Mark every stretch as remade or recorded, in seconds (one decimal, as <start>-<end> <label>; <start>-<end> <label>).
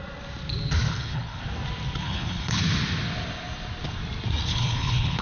0.0-0.9 recorded; 0.9-1.4 remade; 1.4-2.0 recorded; 2.0-2.6 remade; 2.6-4.5 recorded; 4.5-5.2 remade